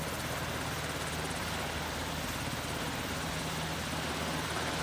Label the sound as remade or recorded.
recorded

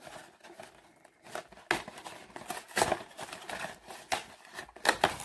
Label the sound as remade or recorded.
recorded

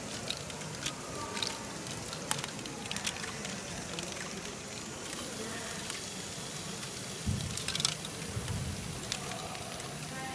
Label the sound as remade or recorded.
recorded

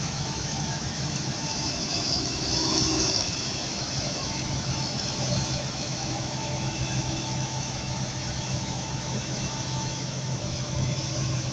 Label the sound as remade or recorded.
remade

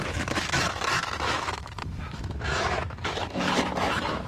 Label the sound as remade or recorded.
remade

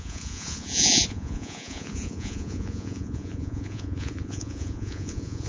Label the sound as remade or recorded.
remade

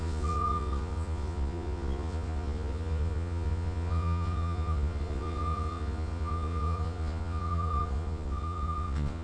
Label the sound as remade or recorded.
remade